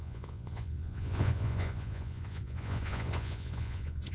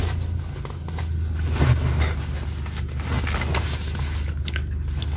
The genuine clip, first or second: second